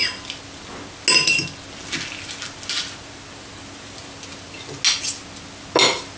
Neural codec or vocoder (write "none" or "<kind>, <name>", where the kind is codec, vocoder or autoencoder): none